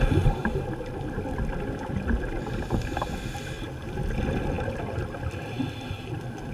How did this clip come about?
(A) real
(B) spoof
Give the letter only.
A